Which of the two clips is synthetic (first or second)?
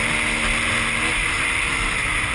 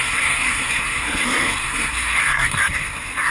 second